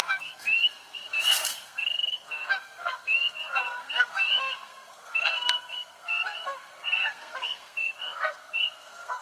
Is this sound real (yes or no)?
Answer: no